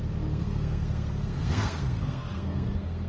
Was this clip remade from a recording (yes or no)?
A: yes